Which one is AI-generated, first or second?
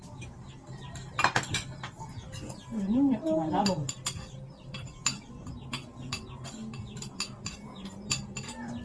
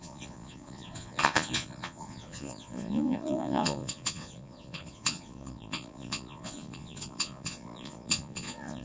second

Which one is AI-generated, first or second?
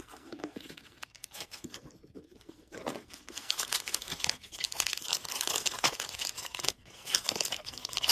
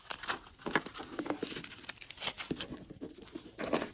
first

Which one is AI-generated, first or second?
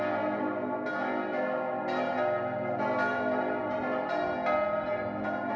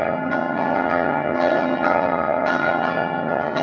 second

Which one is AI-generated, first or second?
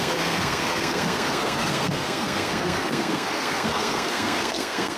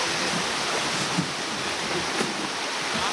first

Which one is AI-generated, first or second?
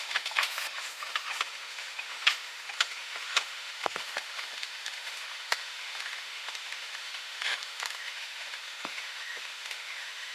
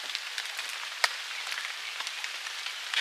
first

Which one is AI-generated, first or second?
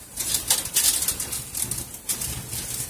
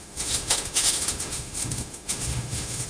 second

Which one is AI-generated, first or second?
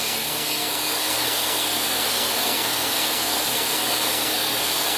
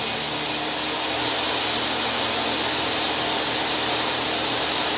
first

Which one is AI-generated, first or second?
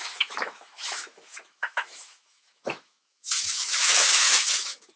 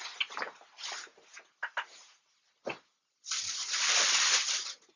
first